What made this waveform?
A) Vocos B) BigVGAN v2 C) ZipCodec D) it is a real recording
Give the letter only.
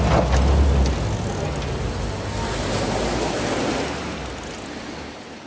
D